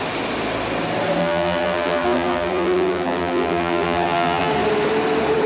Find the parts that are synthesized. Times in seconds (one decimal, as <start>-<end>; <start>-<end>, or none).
1.2-4.5